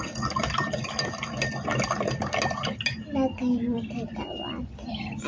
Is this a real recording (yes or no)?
yes